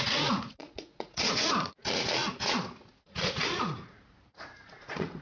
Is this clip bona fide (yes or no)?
no